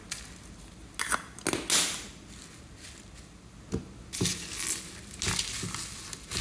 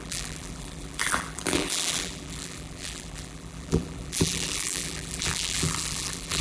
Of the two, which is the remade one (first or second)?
second